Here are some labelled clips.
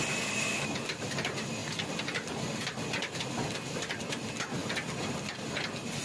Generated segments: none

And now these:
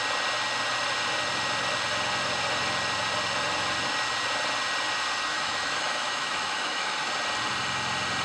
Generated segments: 5.3-7.1 (autoencoder, DAC-VAE)

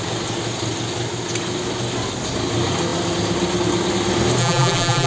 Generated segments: 4.4-5.1 (vocoder, BigVGAN v2)

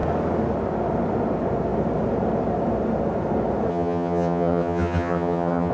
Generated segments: 3.7-5.7 (vocoder, HiFi-GAN)

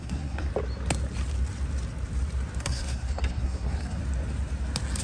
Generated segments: 0.0-0.5 (codec, SNAC); 2.6-4.0